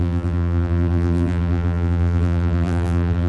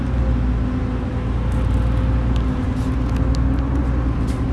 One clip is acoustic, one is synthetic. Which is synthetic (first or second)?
first